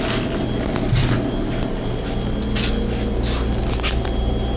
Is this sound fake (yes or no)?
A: no